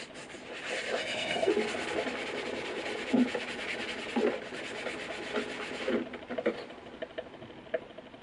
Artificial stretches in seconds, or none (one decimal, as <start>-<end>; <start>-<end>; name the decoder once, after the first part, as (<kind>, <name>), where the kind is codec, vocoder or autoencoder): 1.0-1.5 (codec, SNAC)